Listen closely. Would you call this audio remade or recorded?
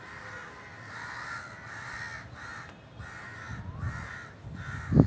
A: recorded